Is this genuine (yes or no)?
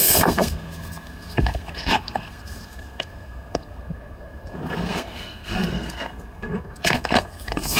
no